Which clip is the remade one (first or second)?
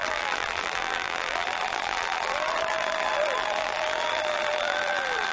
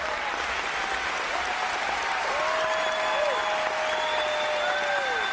first